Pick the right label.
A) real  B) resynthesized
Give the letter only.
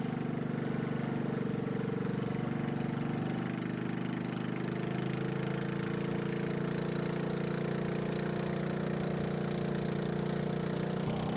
A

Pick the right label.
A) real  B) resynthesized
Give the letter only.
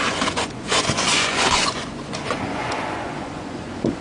B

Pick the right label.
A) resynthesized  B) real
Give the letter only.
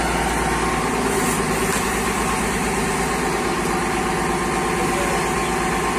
B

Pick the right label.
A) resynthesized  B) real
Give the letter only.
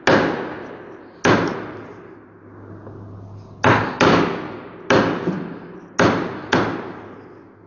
B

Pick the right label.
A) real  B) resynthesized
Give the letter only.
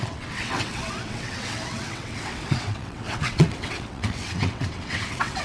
B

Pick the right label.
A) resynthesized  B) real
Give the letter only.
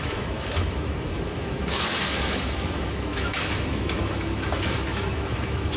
A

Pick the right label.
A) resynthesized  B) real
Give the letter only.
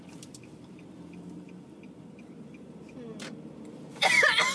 A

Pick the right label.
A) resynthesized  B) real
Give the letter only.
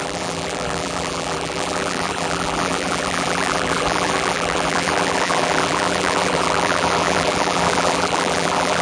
A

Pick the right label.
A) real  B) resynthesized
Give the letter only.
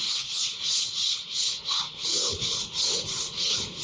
B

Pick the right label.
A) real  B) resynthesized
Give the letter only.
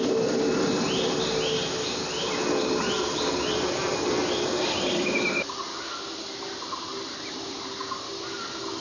A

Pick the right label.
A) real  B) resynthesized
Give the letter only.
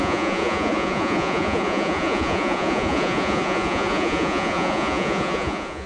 B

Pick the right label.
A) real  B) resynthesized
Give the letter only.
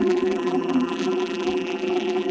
B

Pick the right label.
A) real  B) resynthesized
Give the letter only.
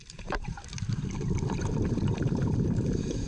B